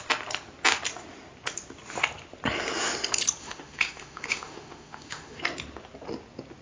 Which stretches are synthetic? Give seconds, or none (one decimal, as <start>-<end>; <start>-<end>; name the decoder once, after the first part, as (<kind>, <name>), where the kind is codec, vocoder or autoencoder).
3.4-5.4 (autoencoder, DAC-VAE)